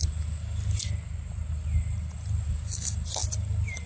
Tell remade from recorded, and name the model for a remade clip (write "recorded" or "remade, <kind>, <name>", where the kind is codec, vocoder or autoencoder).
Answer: recorded